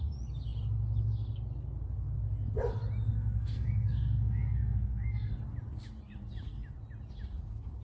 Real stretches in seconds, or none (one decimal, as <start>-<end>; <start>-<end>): 0.0-3.1; 5.3-7.8